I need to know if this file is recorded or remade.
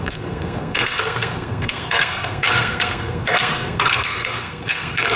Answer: remade